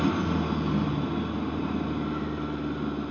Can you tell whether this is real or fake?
real